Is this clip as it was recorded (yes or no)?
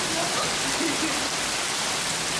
no